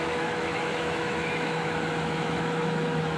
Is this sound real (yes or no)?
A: no